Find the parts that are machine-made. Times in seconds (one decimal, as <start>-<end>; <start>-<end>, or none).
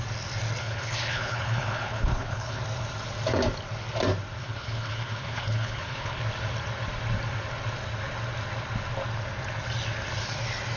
0.6-2.6; 4.4-6.2